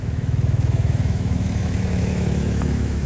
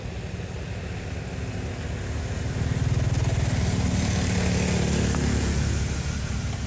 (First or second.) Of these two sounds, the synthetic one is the first